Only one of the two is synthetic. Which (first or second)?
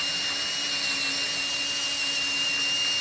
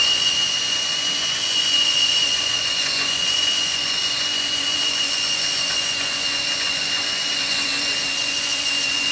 second